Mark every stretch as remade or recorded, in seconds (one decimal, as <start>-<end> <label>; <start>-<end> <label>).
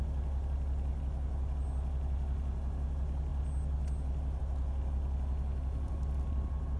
0.0-6.8 recorded